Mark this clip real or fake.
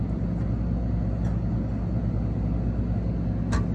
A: real